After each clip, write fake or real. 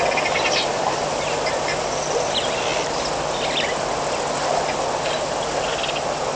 real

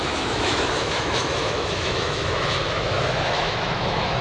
fake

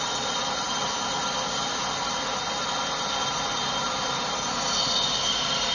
real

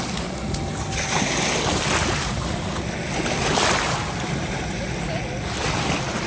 real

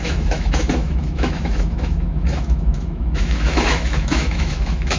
fake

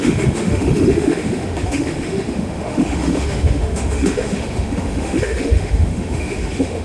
fake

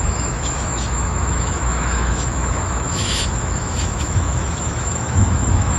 fake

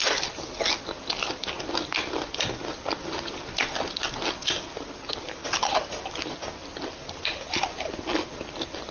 real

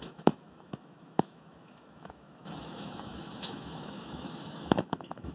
fake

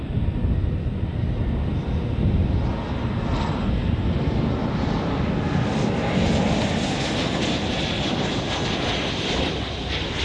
real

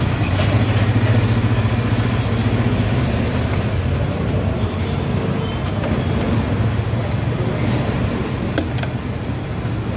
real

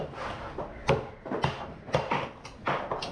real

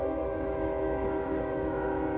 fake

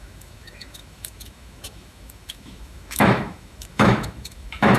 fake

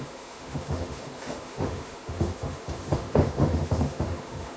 fake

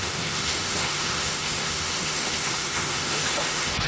fake